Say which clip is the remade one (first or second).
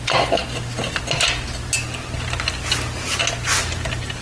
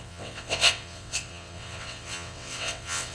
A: second